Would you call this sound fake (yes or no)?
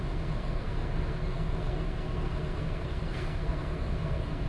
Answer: yes